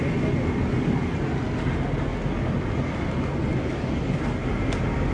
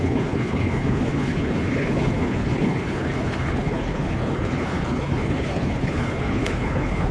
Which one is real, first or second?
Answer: first